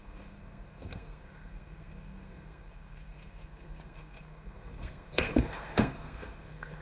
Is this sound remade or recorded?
remade